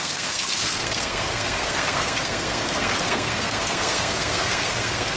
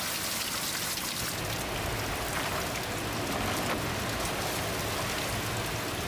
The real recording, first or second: second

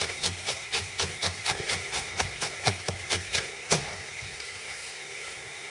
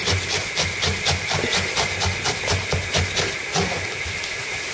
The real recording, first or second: second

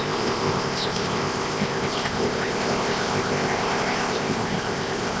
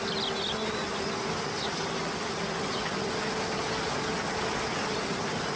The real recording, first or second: second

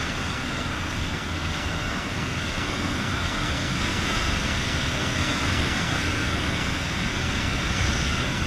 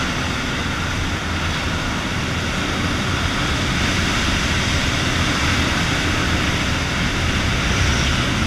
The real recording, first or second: second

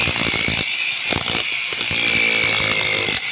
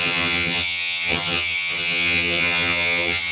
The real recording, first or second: first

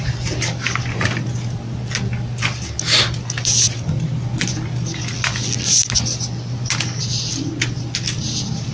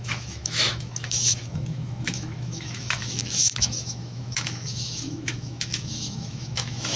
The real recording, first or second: first